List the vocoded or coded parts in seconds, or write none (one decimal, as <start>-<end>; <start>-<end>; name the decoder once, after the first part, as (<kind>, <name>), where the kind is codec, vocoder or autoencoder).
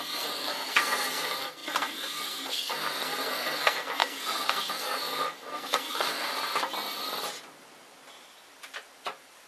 0.0-6.3 (codec, SNAC)